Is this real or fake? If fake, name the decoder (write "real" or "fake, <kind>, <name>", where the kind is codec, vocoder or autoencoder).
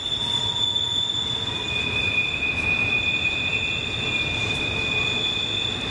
real